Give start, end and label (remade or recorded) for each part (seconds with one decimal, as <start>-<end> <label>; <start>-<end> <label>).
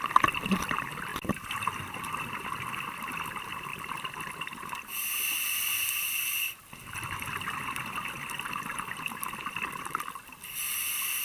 0.0-3.7 remade; 3.7-7.3 recorded; 7.3-11.2 remade